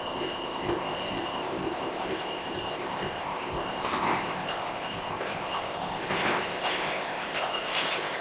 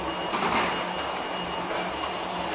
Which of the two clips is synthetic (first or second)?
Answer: first